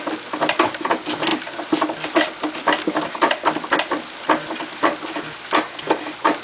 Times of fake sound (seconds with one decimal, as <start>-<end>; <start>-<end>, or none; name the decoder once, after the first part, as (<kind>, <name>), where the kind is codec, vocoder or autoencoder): none